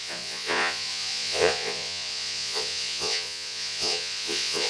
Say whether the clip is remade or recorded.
remade